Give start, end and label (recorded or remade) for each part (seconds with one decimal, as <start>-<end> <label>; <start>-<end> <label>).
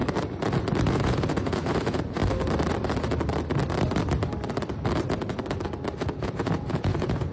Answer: 0.0-0.9 recorded; 0.9-2.2 remade; 2.2-6.0 recorded; 6.0-7.3 remade